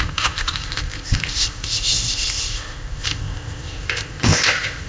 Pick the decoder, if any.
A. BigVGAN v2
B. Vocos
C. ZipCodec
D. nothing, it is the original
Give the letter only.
C